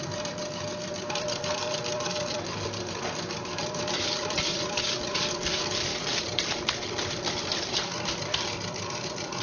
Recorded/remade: remade